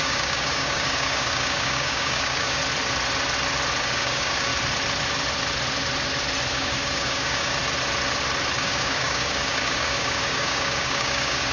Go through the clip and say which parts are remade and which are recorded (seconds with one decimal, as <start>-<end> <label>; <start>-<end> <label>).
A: 0.0-2.6 remade; 2.6-3.8 recorded; 3.8-4.5 remade; 4.5-6.5 recorded; 6.5-7.6 remade; 7.6-8.6 recorded; 8.6-11.5 remade